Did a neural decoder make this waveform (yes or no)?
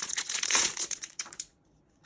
yes